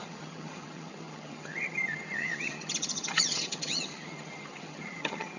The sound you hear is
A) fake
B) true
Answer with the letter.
A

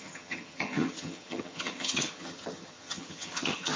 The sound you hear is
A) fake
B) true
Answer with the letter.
A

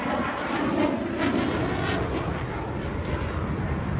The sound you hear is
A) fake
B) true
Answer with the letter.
B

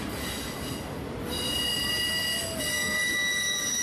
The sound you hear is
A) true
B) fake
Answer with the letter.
A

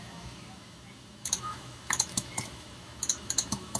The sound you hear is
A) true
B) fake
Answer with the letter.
B